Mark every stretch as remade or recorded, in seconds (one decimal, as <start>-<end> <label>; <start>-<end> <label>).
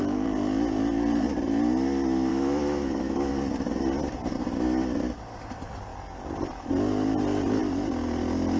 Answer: 0.0-2.3 recorded; 2.3-3.3 remade; 3.3-8.6 recorded